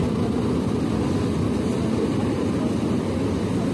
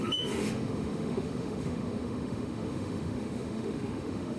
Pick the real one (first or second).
first